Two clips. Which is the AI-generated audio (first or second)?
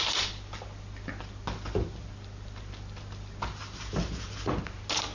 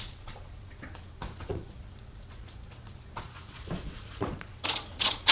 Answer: second